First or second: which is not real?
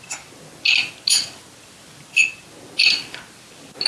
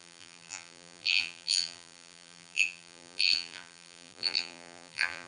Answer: second